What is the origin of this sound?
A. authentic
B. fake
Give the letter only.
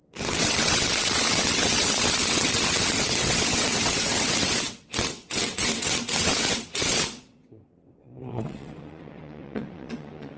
B